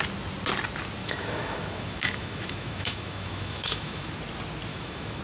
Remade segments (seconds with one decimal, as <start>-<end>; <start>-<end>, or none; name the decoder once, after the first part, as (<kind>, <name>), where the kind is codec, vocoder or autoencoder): 1.0-4.1 (autoencoder, DAC-VAE); 4.7-5.2